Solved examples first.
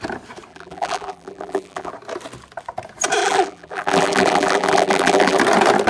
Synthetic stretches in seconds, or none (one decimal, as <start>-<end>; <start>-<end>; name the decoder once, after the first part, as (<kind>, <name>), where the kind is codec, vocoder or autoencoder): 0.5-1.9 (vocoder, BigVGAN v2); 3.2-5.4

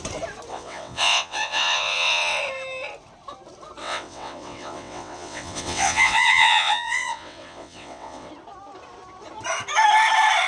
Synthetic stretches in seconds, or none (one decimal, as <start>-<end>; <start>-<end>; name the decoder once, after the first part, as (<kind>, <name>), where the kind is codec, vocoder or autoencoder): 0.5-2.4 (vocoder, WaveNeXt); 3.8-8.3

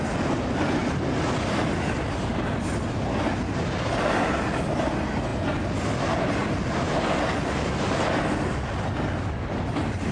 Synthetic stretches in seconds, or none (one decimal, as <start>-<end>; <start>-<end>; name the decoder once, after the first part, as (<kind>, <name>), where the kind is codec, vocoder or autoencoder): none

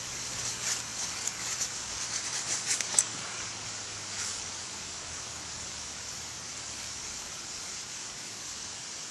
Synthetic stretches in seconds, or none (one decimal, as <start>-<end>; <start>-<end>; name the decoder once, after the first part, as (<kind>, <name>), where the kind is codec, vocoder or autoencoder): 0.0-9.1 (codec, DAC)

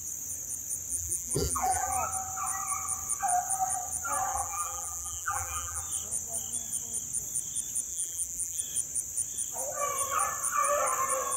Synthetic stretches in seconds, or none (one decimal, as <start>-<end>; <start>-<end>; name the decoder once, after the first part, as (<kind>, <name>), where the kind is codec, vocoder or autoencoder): 0.9-1.9 (vocoder, BigVGAN v2); 4.3-5.8; 7.9-8.6